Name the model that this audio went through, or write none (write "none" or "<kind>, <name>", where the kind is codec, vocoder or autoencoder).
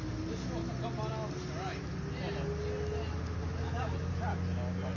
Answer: none